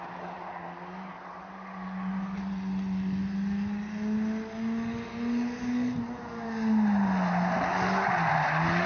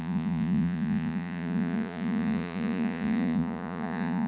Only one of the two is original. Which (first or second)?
first